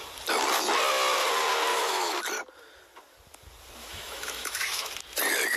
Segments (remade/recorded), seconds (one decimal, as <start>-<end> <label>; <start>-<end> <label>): 0.0-1.7 recorded; 1.7-2.2 remade; 2.2-3.8 recorded; 3.8-4.9 remade; 4.9-5.6 recorded